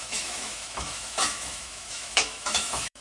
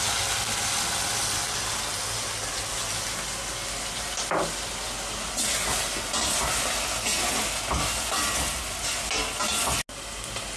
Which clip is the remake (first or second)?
first